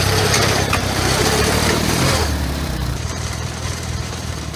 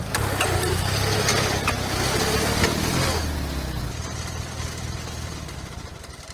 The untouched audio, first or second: second